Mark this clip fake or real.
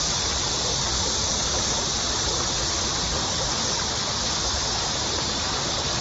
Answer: real